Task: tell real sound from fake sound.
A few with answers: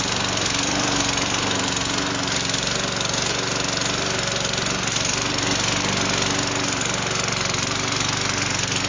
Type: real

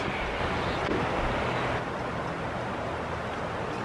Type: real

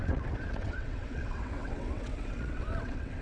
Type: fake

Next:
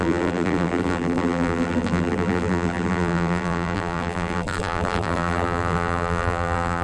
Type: fake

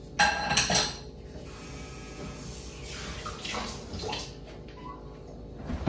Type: real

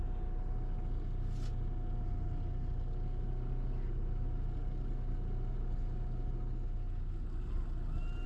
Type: real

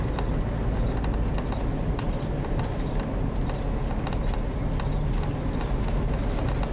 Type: real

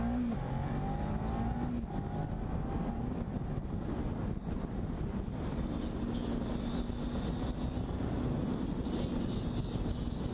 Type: real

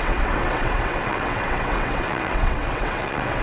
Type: fake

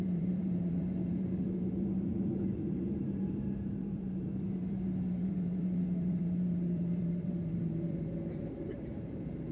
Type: fake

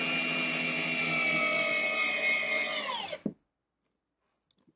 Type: real